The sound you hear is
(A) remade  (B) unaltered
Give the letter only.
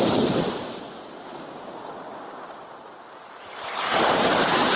A